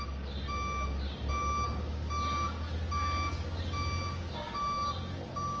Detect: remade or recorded recorded